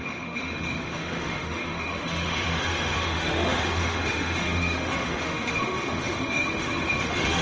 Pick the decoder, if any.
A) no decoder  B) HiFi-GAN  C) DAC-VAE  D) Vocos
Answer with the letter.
C